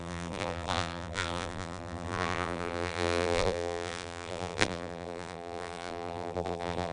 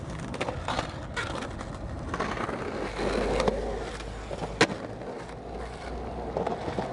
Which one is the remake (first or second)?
first